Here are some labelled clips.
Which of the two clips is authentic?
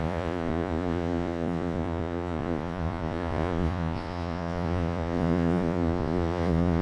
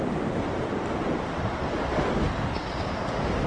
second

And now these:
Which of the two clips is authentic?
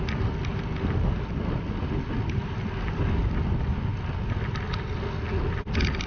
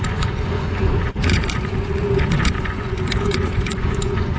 first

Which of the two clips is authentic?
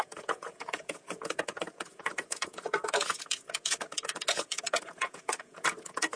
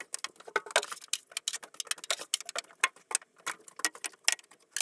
second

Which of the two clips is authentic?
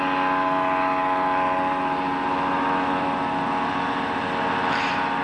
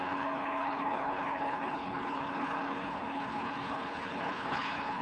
first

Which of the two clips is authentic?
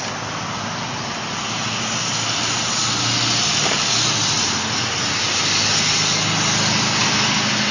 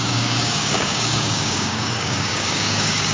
first